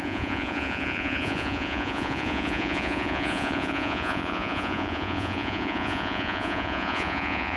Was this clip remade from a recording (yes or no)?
yes